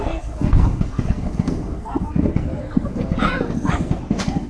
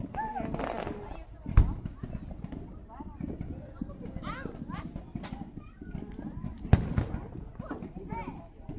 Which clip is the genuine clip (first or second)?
second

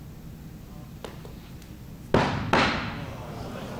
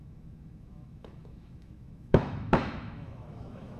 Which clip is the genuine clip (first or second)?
first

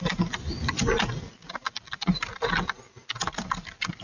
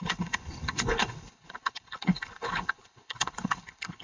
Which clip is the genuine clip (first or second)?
first